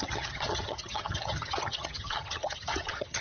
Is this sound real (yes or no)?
no